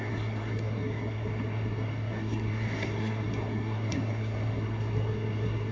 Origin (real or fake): fake